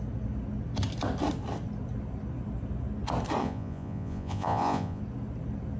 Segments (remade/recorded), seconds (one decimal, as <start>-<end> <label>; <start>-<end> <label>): 0.0-3.4 recorded; 3.4-5.0 remade; 5.0-5.8 recorded